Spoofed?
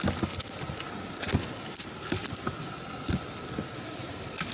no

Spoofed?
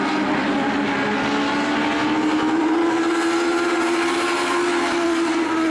no